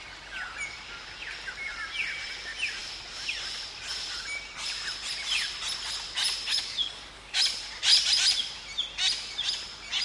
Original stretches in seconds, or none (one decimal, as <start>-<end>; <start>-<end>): 0.0-6.5; 7.4-10.0